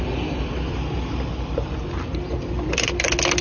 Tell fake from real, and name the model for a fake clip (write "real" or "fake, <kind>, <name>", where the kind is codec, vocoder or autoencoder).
real